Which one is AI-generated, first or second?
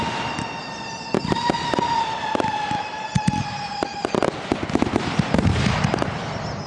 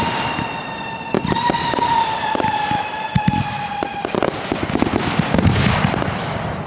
second